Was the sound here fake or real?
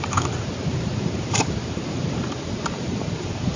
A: fake